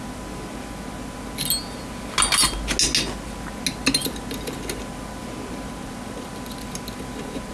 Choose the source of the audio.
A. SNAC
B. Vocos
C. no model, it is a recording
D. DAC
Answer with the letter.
C